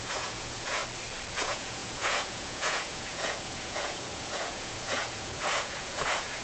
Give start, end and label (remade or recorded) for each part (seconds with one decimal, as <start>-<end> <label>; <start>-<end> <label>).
0.0-0.8 remade; 0.8-1.3 recorded; 1.3-6.4 remade